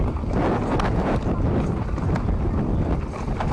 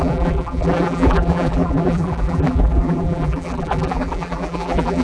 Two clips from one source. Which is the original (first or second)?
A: first